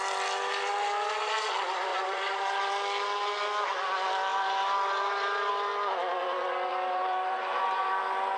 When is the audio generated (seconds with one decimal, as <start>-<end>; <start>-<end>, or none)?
1.9-2.4; 4.3-5.5; 6.7-7.9